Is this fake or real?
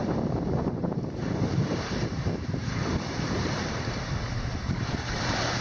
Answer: fake